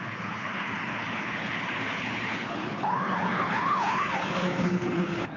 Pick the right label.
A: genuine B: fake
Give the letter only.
B